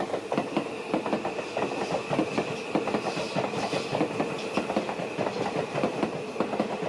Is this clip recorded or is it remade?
recorded